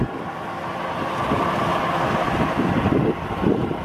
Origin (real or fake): real